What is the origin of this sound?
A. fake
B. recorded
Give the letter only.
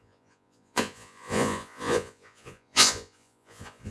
A